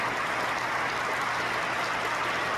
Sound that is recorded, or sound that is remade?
recorded